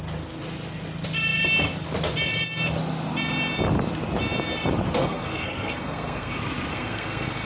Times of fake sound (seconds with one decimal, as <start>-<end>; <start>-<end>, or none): 5.0-6.3; 6.7-7.5